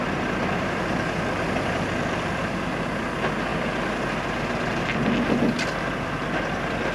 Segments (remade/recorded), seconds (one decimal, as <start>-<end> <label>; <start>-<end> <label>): 0.0-6.9 recorded